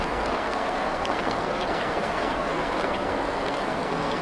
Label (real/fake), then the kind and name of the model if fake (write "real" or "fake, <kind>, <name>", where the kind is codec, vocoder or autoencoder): fake, codec, SNAC